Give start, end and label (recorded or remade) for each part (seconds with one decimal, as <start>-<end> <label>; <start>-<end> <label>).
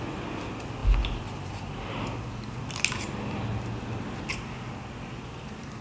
0.0-5.8 recorded